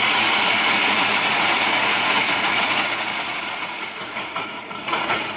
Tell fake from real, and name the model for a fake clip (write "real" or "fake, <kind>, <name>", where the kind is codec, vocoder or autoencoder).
fake, vocoder, Vocos